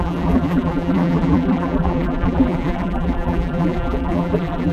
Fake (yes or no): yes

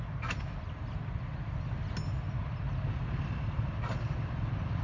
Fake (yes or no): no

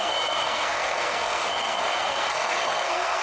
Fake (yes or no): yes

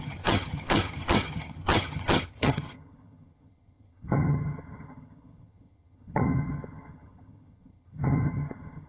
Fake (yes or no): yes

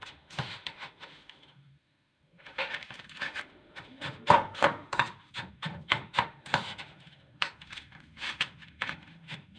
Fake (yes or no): yes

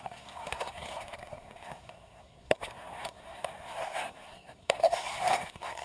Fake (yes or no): yes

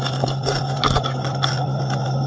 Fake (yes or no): no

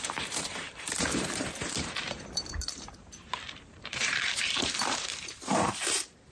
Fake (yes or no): yes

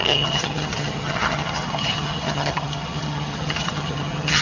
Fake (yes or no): yes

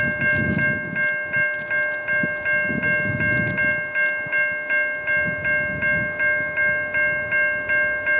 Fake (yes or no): no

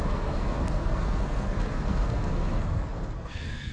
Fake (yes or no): yes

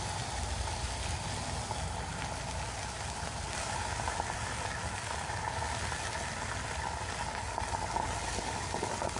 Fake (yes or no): no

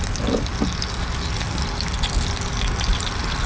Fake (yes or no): no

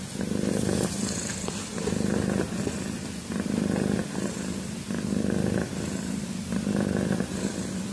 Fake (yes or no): no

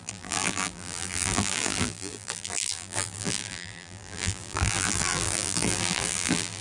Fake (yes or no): yes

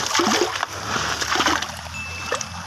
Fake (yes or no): no